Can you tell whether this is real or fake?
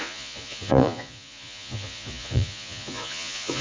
fake